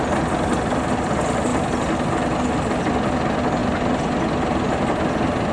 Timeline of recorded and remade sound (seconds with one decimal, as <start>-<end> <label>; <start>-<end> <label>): 0.0-5.5 recorded